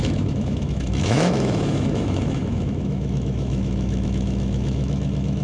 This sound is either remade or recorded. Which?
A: remade